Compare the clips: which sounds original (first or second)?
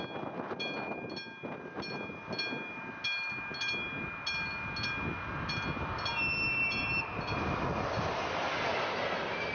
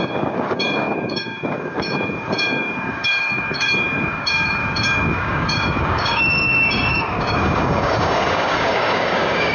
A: first